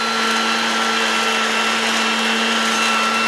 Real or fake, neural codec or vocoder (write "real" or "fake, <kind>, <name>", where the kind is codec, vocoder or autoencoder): real